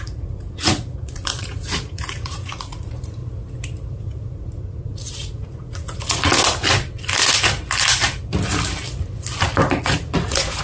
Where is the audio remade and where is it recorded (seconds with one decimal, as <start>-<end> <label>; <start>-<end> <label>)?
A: 0.0-3.2 remade; 3.2-3.9 recorded; 3.9-6.3 remade; 6.3-9.8 recorded; 9.8-10.6 remade